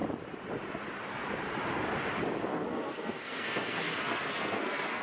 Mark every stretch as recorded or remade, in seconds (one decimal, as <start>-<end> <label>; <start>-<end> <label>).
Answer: 0.0-2.5 recorded; 2.5-5.0 remade